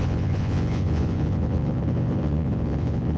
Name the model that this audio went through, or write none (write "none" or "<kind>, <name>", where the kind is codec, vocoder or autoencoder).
vocoder, Vocos